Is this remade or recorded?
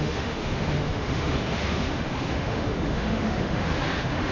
remade